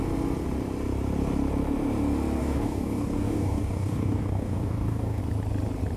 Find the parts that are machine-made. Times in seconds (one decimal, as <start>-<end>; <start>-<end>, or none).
2.4-5.2